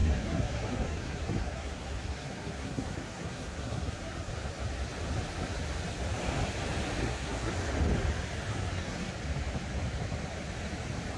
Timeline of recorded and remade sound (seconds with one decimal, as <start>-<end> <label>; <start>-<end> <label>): 0.0-4.3 remade; 4.3-7.0 recorded; 7.0-7.5 remade; 7.5-8.5 recorded; 8.5-9.1 remade; 9.1-11.2 recorded